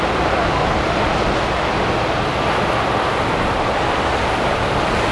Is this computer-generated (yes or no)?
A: no